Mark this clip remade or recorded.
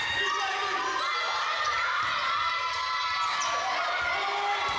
recorded